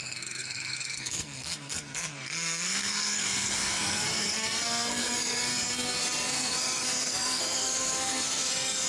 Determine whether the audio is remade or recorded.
remade